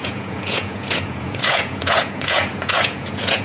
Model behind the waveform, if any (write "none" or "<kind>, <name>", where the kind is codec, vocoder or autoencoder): vocoder, Vocos